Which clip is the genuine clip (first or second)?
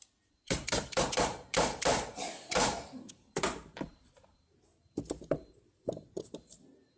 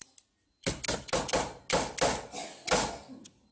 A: second